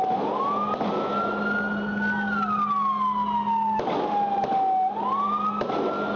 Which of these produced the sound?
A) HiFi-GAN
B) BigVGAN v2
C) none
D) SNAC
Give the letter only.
C